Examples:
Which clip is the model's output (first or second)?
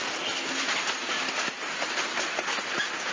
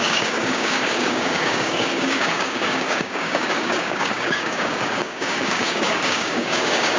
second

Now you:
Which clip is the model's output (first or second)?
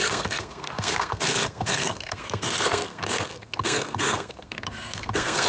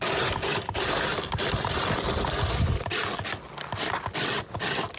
first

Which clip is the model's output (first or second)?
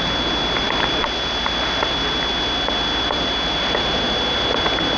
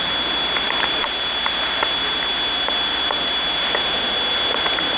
second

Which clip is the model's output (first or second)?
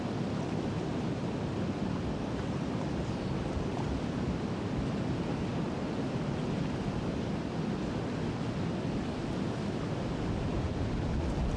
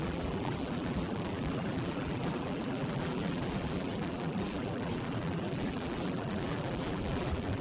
second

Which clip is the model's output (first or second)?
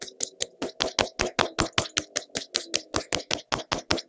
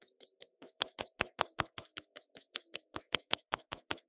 second